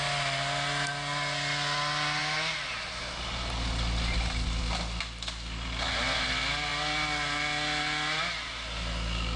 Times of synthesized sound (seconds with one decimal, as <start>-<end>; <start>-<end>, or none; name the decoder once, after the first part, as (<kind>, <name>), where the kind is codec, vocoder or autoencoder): none